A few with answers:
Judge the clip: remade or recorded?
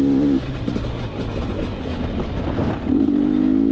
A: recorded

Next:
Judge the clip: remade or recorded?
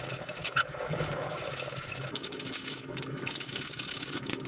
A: remade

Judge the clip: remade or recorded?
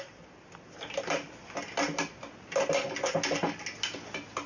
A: recorded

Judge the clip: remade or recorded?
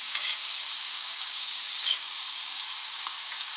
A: remade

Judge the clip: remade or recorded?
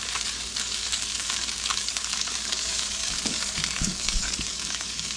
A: remade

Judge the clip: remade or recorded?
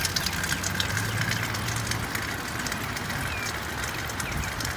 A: recorded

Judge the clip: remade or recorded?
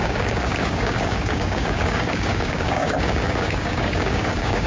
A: remade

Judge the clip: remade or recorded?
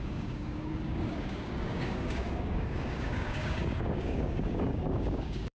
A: remade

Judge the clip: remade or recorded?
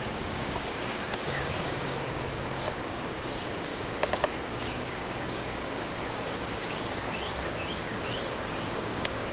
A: remade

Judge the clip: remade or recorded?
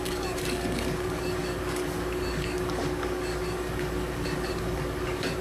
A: remade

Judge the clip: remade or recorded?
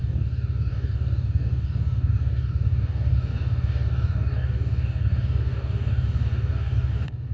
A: remade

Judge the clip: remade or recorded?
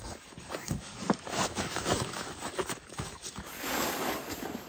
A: remade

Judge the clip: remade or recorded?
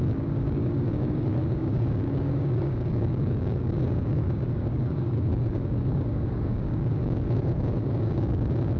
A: remade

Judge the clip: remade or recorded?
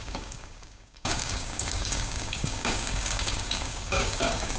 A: remade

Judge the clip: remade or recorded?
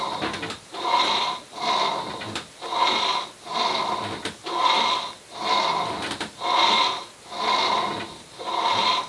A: recorded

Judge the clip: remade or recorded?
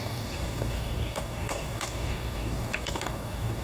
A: remade